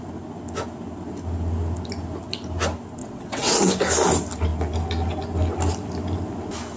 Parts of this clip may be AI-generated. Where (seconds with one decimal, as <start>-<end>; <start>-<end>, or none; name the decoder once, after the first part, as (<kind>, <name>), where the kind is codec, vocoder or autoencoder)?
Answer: 3.0-3.7 (vocoder, WaveNeXt)